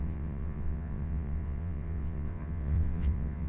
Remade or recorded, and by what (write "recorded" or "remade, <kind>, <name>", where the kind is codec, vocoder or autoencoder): remade, vocoder, WaveNeXt